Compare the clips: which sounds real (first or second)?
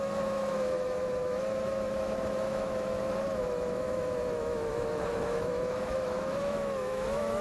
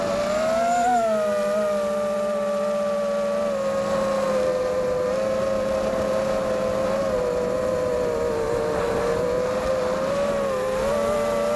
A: second